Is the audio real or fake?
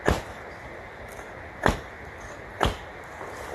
real